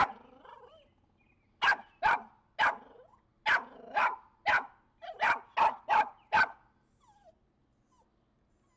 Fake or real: real